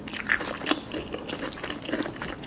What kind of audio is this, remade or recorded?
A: recorded